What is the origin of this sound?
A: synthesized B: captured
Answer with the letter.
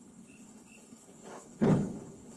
A